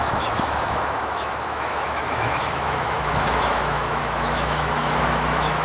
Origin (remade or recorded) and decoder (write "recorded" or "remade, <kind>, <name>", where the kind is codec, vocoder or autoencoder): remade, autoencoder, DAC-VAE